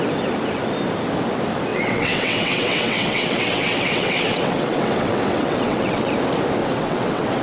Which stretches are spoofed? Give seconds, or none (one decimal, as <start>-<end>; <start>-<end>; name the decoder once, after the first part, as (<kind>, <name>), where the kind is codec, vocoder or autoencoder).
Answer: 1.7-6.1 (vocoder, WaveNeXt); 6.6-7.4